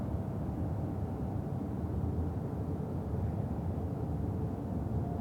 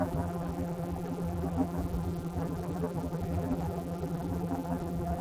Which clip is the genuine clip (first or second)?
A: first